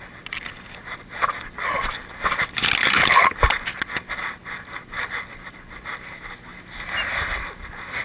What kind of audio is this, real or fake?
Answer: real